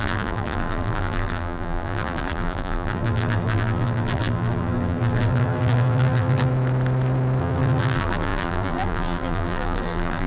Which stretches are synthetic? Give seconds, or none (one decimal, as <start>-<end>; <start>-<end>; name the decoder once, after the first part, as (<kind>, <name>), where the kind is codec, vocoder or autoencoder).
0.0-6.5 (vocoder, BigVGAN v2); 7.4-10.3